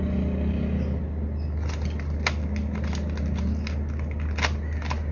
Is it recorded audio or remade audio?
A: recorded